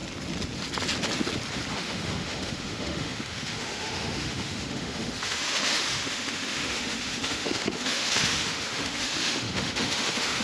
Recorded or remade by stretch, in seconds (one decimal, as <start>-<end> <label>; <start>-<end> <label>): 0.0-1.7 recorded; 1.7-10.4 remade